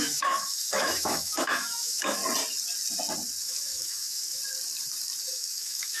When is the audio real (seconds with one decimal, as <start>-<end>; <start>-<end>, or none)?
2.2-3.4; 4.4-5.2